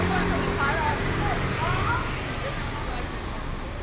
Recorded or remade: recorded